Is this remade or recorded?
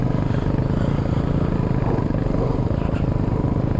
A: recorded